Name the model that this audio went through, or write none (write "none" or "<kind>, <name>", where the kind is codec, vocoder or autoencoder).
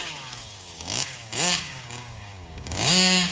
codec, DAC